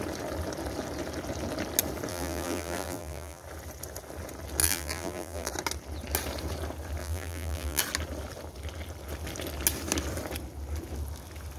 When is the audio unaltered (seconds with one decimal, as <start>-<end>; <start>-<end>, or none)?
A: 0.0-2.1; 3.4-4.6; 5.5-7.0; 7.8-11.6